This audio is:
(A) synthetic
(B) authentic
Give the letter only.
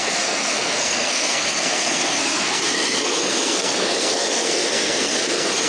A